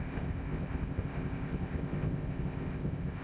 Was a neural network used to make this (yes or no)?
yes